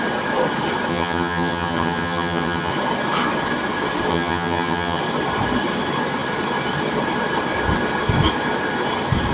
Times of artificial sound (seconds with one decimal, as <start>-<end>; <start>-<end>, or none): 0.9-2.7; 4.1-5.0